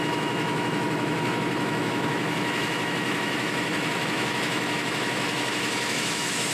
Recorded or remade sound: remade